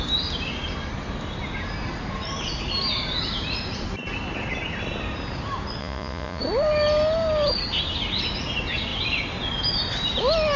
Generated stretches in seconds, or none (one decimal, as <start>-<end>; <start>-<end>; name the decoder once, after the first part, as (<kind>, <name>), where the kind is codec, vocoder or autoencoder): 5.8-6.4 (vocoder, Vocos)